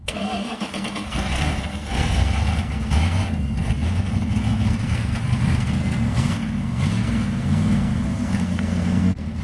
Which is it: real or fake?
fake